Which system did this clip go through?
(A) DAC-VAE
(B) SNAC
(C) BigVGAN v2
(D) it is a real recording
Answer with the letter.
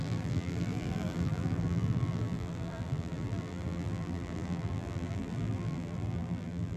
C